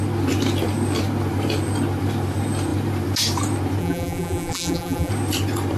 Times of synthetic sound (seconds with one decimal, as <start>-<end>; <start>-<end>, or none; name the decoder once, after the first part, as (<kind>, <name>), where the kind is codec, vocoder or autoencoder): 3.8-5.1 (vocoder, BigVGAN v2)